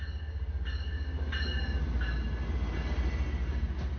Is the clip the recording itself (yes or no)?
yes